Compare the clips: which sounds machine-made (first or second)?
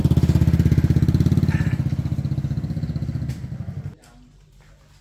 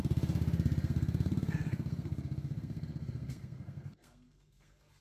second